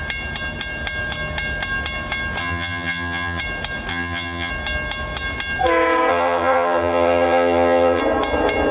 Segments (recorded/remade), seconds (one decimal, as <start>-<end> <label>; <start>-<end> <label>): 0.0-2.4 recorded; 2.4-3.4 remade; 3.4-3.9 recorded; 3.9-4.5 remade; 4.5-6.1 recorded; 6.1-8.0 remade; 8.0-8.7 recorded